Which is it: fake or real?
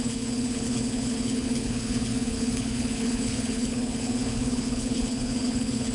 fake